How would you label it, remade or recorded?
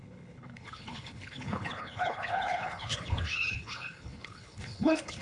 remade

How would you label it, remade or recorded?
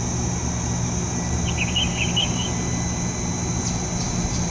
recorded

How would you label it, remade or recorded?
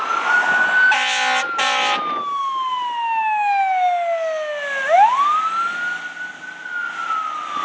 recorded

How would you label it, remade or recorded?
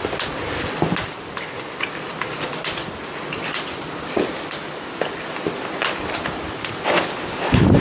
recorded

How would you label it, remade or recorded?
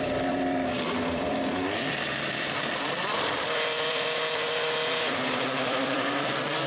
remade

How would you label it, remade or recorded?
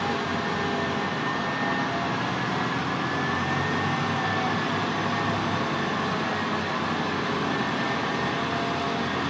recorded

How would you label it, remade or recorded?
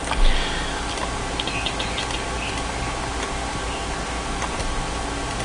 recorded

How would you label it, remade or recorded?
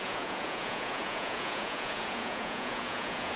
remade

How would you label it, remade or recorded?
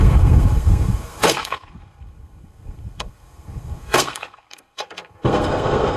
remade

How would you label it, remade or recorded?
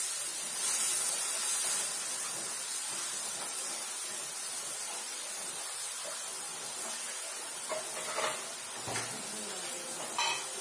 recorded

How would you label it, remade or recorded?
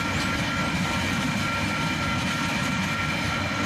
recorded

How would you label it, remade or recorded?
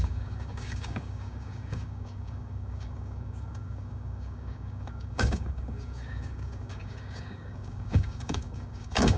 remade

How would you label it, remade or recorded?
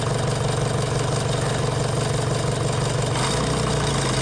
recorded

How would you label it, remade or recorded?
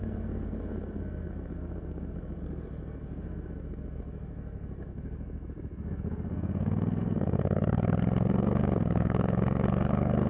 remade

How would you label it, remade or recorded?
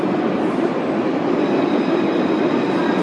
remade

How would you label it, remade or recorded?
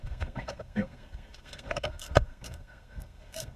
remade